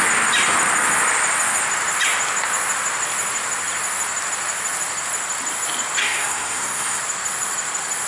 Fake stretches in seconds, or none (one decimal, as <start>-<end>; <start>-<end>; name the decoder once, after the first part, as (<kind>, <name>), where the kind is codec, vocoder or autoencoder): 6.0-7.0 (codec, SNAC)